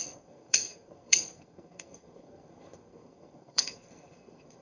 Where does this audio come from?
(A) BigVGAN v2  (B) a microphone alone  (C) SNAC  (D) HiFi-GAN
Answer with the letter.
C